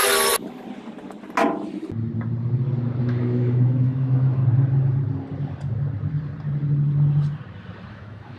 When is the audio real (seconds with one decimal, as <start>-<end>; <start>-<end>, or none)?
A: 0.0-3.0; 4.4-7.9